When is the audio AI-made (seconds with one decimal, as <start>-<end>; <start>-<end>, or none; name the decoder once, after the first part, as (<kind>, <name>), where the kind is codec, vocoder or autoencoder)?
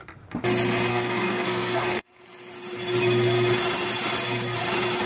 0.9-2.2 (codec, SNAC)